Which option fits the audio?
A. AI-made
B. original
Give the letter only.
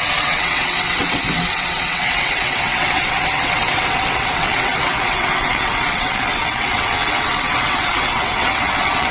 A